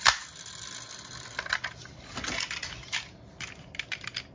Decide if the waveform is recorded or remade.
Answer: recorded